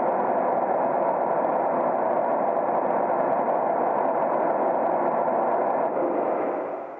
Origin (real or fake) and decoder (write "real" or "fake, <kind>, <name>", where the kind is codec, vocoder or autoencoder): real